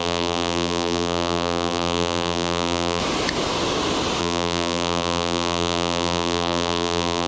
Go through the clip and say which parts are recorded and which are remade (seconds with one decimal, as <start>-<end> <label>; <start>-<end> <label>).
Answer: 0.0-3.0 remade; 3.0-4.2 recorded; 4.2-7.3 remade